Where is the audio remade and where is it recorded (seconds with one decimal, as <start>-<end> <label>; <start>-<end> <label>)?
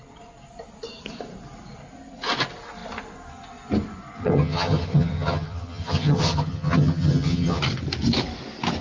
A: 0.0-4.2 recorded; 4.2-7.6 remade; 7.6-8.8 recorded